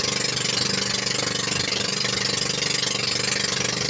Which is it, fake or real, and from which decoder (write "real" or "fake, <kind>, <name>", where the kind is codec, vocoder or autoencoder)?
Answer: real